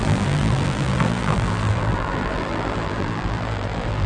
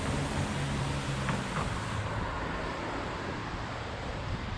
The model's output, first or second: first